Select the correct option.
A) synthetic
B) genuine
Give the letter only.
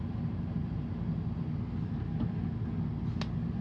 B